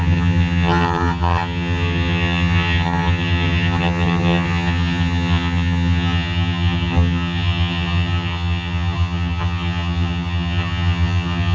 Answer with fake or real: fake